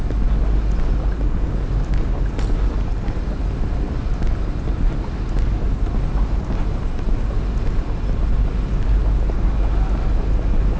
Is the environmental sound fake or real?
real